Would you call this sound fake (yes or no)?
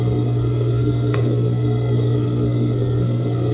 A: yes